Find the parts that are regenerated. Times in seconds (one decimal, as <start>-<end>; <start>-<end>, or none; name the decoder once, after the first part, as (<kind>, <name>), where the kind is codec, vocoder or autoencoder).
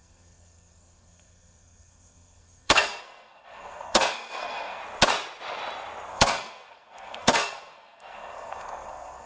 0.0-4.8 (codec, SNAC); 6.1-9.3